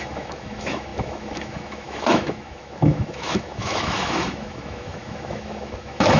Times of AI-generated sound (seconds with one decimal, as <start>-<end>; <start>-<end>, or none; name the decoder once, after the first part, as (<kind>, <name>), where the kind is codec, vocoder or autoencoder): 0.0-6.2 (autoencoder, DAC-VAE)